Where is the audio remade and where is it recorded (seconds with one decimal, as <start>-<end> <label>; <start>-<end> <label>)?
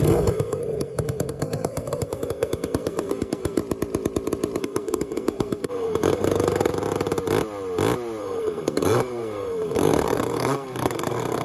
0.0-3.6 remade; 3.6-4.6 recorded; 4.6-6.7 remade; 6.7-8.2 recorded; 8.2-11.4 remade